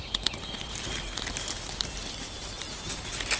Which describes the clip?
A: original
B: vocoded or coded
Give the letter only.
A